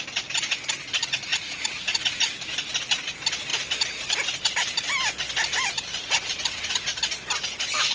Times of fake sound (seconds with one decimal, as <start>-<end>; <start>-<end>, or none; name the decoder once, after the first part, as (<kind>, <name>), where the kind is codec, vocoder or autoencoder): 1.3-2.2 (vocoder, Vocos); 5.9-7.0